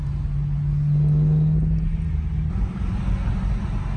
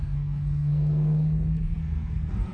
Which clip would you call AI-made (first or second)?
second